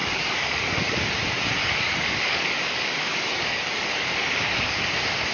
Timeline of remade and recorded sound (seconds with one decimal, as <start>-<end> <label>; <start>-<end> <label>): 0.0-1.0 remade; 1.0-1.6 recorded; 1.6-4.8 remade; 4.8-5.3 recorded